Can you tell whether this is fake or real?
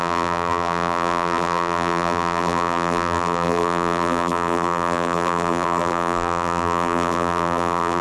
fake